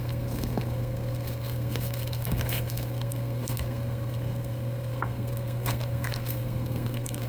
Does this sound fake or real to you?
fake